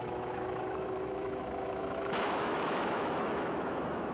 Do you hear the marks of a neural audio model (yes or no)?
yes